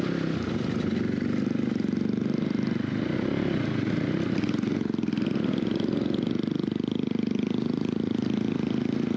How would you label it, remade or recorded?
recorded